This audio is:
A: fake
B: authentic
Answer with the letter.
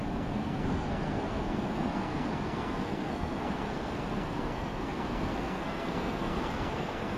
A